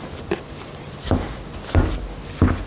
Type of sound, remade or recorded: recorded